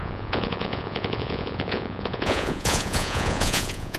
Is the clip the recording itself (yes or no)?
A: no